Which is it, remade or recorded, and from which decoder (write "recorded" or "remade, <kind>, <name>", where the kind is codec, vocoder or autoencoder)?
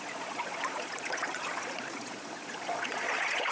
remade, vocoder, Vocos